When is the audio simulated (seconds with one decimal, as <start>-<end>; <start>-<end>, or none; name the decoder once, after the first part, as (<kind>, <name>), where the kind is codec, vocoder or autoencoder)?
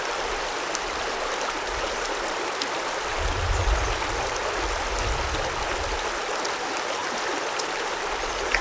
none